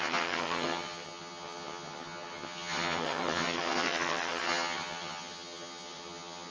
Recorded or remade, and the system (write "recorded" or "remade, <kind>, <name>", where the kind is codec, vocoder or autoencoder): remade, vocoder, HiFi-GAN